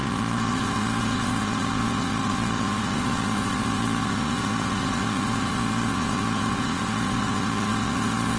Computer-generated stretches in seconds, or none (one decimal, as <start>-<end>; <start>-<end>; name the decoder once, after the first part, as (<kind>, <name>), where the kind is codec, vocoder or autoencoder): 0.0-8.4 (vocoder, Vocos)